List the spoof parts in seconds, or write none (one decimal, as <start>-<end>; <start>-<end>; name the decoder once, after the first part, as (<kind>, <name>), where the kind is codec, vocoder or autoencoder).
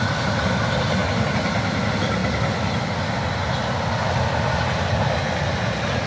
none